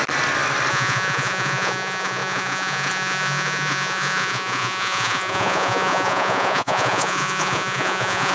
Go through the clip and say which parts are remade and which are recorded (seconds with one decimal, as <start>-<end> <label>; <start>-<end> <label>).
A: 0.0-0.7 recorded; 0.7-8.3 remade